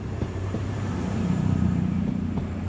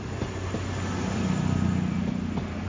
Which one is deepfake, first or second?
first